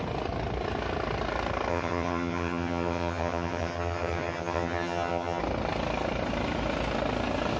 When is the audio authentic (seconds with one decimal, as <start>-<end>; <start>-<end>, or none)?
0.0-1.7; 5.4-7.6

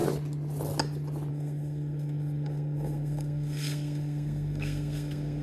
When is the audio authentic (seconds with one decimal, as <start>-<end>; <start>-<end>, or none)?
0.0-1.3

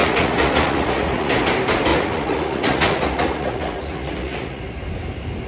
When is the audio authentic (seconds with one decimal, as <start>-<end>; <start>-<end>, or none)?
1.3-1.9; 4.6-5.5

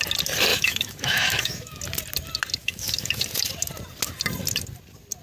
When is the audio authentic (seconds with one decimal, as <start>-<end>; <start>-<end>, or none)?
0.0-0.5; 1.8-2.6; 3.2-5.2